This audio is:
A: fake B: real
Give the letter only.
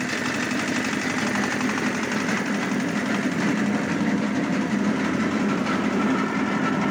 B